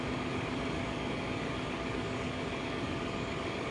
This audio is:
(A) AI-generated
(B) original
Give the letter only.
A